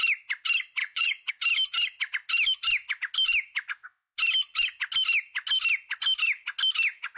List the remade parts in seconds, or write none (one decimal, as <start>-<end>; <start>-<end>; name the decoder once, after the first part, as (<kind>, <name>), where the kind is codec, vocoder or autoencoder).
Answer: 0.8-1.3 (vocoder, Vocos)